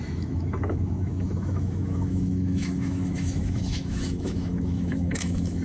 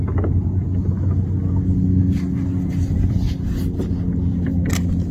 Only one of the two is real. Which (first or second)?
second